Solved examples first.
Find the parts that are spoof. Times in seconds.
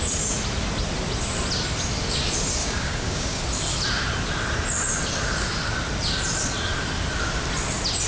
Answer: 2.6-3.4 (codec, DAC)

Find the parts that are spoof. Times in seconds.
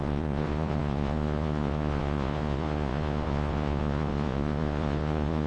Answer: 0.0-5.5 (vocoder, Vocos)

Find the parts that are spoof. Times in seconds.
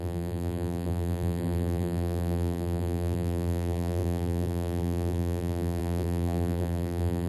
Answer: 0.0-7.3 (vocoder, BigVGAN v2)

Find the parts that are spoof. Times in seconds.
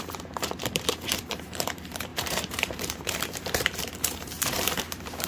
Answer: 0.0-5.3 (vocoder, BigVGAN v2)